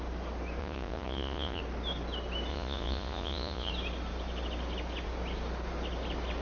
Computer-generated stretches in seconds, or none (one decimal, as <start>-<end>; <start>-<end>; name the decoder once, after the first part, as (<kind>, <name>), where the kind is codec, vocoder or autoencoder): 0.6-1.6 (vocoder, Vocos); 2.5-3.7